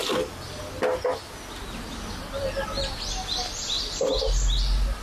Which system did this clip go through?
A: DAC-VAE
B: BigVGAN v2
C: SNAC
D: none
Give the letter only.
D